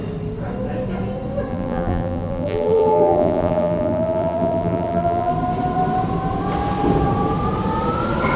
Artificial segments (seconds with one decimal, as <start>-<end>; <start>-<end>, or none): 1.5-5.3